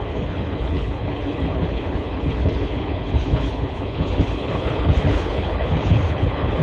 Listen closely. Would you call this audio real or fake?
fake